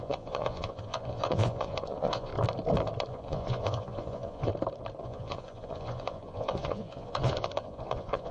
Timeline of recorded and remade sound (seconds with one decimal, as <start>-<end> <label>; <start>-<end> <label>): 0.0-2.3 remade; 2.3-3.1 recorded; 3.1-4.5 remade; 4.5-5.0 recorded; 5.0-8.3 remade